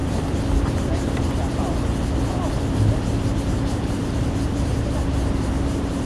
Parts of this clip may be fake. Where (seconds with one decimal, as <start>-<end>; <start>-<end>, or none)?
2.3-6.1